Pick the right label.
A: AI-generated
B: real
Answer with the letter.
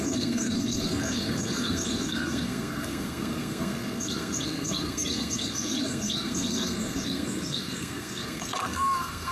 A